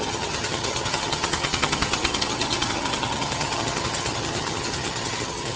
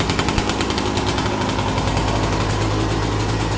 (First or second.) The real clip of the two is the second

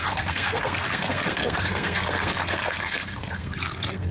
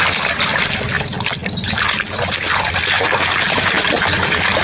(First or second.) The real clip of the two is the second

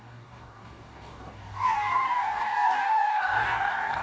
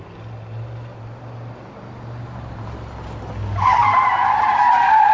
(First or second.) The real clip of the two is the second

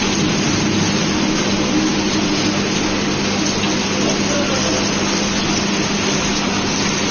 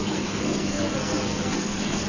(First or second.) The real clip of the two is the first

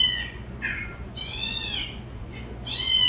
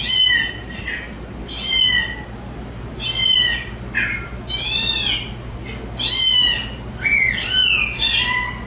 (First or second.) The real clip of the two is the second